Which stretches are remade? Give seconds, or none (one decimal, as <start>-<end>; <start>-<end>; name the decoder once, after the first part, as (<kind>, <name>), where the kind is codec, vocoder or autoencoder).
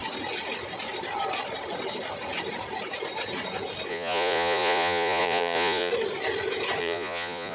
3.9-5.9 (vocoder, Vocos); 6.8-7.5